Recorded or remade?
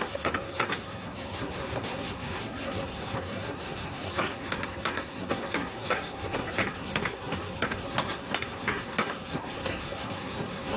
remade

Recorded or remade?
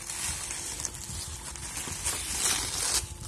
recorded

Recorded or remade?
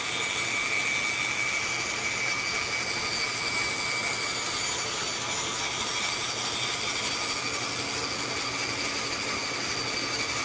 recorded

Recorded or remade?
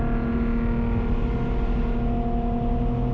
recorded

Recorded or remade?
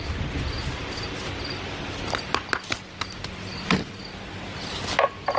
recorded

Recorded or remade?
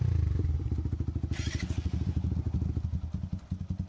recorded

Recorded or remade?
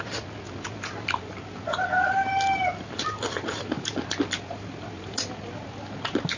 recorded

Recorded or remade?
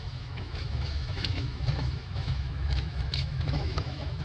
remade